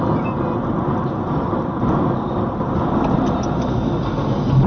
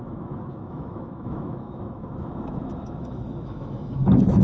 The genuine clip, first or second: first